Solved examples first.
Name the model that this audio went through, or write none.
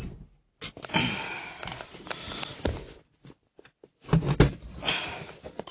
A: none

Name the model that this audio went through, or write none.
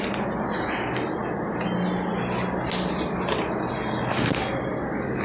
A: none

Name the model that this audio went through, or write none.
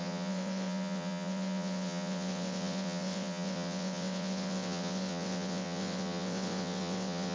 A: vocoder, WaveNeXt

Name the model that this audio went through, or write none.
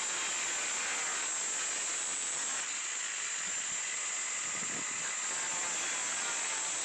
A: none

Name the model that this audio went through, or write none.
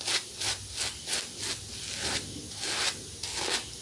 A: none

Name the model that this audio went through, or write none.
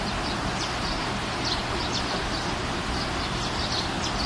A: none